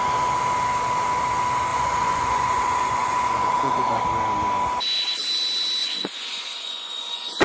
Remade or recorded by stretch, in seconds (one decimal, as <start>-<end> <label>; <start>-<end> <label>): 0.0-1.7 recorded; 1.7-4.0 remade; 4.0-5.8 recorded; 5.8-7.4 remade